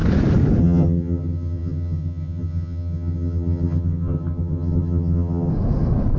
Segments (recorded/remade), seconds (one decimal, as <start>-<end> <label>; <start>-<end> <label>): 0.0-0.6 recorded; 0.6-5.5 remade; 5.5-6.2 recorded